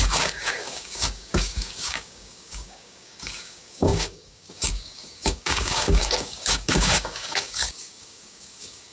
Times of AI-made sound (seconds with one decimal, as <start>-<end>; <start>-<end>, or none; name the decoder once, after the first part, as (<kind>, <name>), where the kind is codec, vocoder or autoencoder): 0.0-8.9 (codec, DAC)